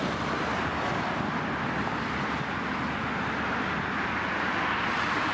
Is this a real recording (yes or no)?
yes